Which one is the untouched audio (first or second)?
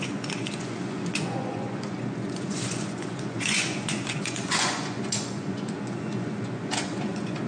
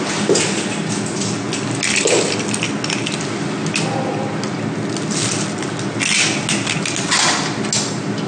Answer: second